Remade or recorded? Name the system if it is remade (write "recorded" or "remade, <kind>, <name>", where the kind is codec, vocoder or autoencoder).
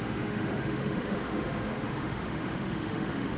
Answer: remade, autoencoder, DAC-VAE